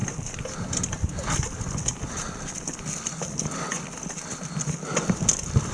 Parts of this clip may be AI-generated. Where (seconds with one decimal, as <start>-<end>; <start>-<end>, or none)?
none